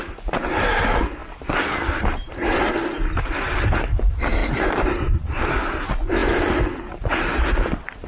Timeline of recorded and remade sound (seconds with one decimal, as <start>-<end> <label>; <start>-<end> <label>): 0.0-1.2 recorded; 1.2-3.6 remade; 3.6-4.4 recorded; 4.4-5.5 remade; 5.5-8.1 recorded